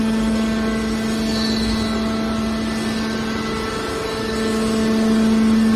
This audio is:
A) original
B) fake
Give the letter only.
A